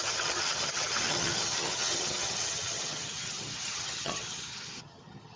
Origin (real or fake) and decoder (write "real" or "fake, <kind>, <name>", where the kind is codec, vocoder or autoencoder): fake, vocoder, HiFi-GAN